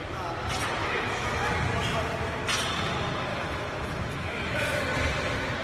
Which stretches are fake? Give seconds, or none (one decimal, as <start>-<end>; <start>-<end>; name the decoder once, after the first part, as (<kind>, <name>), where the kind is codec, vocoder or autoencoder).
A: 0.8-1.5 (autoencoder, DAC-VAE); 3.3-4.8